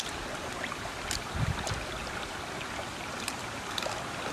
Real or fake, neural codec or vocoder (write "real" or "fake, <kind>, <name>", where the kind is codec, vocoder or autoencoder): real